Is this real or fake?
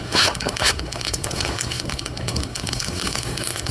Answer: fake